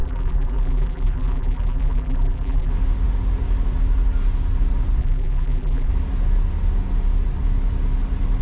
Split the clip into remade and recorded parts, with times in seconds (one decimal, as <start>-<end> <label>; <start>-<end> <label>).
0.0-2.7 remade; 2.7-5.0 recorded; 5.0-5.9 remade; 5.9-8.4 recorded